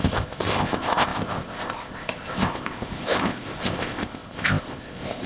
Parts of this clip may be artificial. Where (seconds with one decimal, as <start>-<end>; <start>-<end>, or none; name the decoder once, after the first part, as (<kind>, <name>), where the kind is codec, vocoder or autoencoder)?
0.0-5.3 (codec, ZipCodec)